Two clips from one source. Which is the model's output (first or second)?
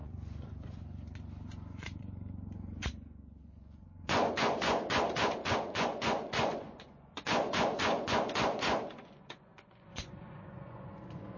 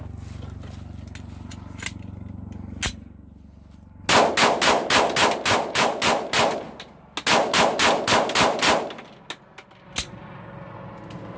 first